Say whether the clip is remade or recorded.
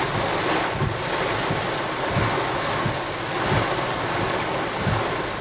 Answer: recorded